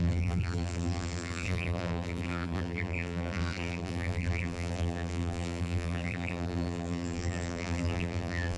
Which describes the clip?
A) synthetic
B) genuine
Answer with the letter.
A